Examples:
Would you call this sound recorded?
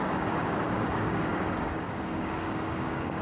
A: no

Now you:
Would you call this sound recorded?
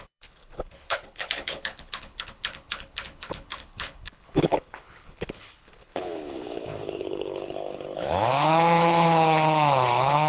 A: no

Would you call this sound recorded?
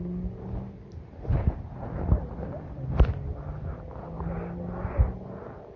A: yes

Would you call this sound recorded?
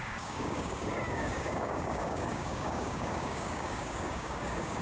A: no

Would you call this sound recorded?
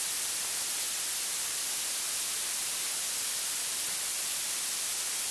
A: yes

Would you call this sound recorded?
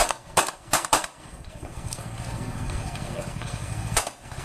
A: no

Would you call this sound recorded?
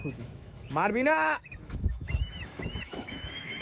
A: no